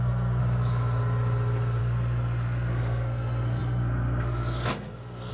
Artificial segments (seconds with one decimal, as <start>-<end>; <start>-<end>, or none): 0.0-0.4; 1.8-5.3